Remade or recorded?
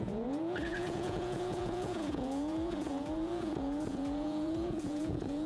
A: remade